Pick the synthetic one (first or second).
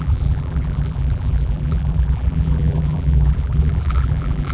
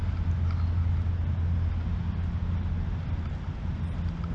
first